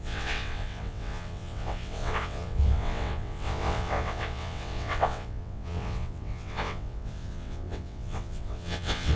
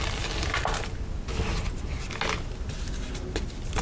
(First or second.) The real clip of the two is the second